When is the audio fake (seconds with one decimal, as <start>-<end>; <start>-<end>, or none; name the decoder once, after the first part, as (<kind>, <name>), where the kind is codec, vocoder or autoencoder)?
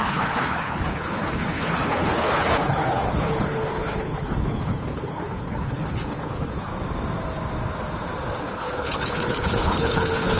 0.0-6.7 (codec, HILCodec); 8.4-10.4